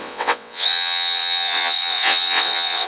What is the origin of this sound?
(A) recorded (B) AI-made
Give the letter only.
B